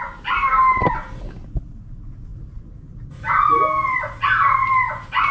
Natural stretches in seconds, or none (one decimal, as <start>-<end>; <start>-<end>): 0.0-5.3